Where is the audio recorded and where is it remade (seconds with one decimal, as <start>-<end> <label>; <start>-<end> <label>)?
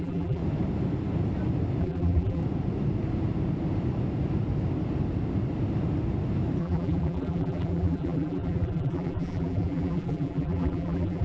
0.0-0.4 remade; 0.4-1.8 recorded; 1.8-2.4 remade; 2.4-6.6 recorded; 6.6-11.2 remade